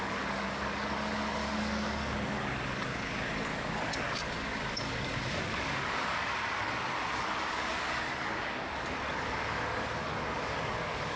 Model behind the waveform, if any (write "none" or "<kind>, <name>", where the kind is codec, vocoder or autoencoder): codec, DAC